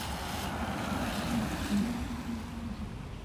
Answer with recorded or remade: remade